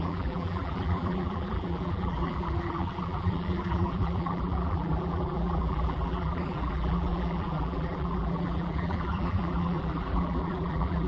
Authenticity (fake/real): fake